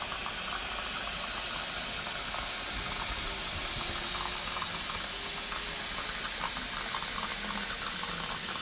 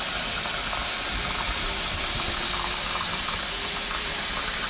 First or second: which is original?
first